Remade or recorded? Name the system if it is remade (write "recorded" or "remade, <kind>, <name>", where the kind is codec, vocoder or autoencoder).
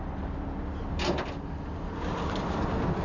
recorded